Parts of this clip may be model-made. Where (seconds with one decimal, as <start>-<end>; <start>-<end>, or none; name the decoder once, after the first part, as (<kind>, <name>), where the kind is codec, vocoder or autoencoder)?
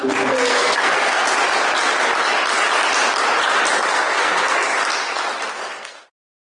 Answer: 0.0-1.2 (codec, SNAC); 3.9-4.7; 5.5-6.4